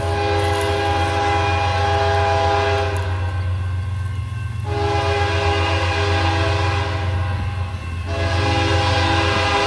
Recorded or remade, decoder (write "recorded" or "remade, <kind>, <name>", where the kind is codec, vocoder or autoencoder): recorded